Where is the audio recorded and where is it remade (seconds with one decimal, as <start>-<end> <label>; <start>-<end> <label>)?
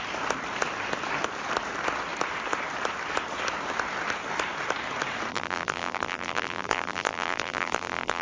0.0-5.3 recorded; 5.3-8.2 remade